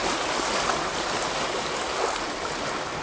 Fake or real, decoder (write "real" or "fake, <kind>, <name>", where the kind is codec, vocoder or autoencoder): real